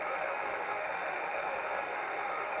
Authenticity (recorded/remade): remade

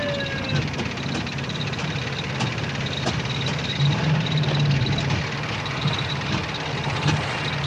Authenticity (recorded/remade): recorded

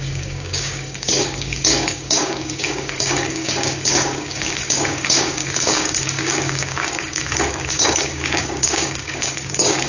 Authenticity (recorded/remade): remade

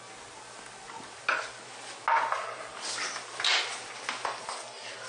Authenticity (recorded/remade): recorded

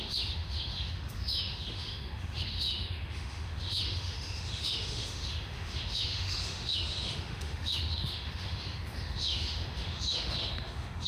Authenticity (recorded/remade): remade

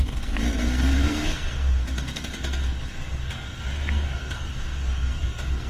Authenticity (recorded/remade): remade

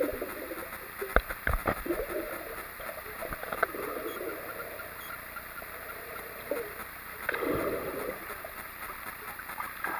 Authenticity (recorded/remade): remade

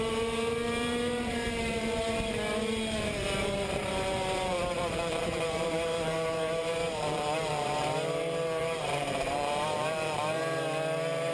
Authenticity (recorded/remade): remade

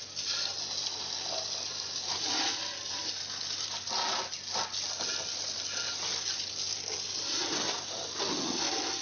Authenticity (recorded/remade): recorded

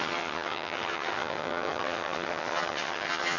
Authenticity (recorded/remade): remade